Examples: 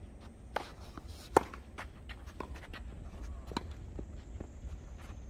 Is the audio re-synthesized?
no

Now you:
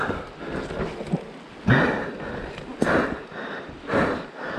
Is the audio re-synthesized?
no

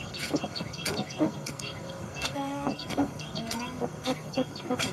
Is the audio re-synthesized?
yes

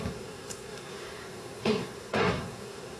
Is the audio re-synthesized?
yes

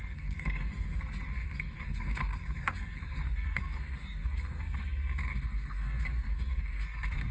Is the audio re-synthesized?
yes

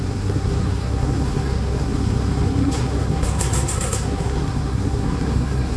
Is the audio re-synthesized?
yes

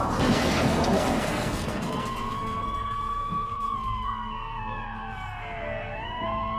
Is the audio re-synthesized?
yes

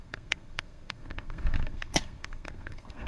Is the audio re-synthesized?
yes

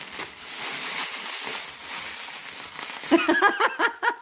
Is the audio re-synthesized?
no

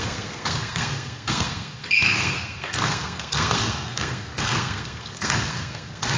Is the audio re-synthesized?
yes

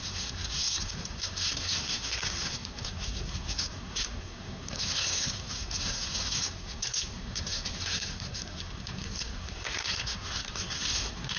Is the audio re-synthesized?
yes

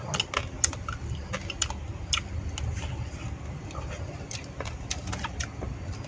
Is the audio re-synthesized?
no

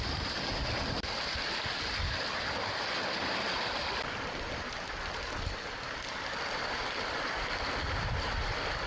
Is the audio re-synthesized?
no